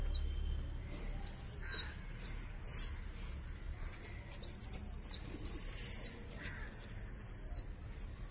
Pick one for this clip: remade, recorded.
recorded